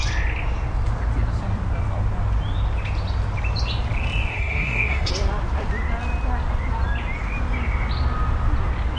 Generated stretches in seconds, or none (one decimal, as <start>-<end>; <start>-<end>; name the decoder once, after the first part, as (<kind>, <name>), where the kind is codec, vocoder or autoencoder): 4.3-5.1 (codec, SNAC)